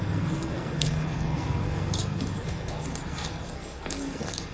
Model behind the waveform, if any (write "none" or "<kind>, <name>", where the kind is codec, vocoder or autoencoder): codec, SNAC